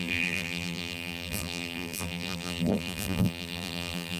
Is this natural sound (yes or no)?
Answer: no